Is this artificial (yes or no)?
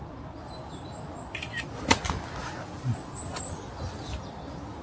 no